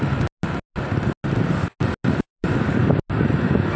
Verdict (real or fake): real